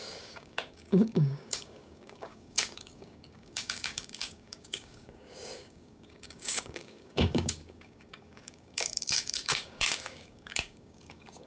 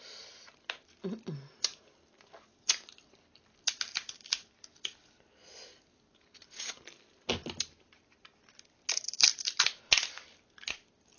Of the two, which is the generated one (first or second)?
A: first